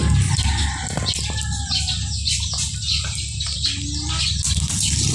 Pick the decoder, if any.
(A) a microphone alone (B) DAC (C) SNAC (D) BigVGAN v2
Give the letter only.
A